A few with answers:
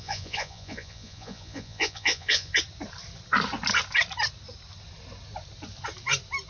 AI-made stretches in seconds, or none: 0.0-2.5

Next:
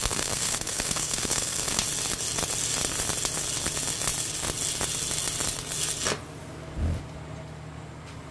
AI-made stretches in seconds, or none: 0.0-1.8